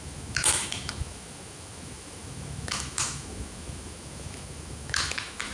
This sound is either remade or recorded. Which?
remade